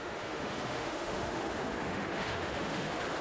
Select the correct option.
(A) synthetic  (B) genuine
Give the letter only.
A